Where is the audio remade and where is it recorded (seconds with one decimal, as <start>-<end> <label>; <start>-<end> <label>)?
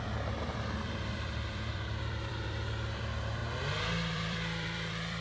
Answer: 0.0-3.4 remade; 3.4-4.1 recorded; 4.1-5.2 remade